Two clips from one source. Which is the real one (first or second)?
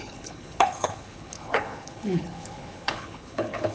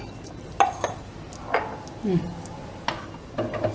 second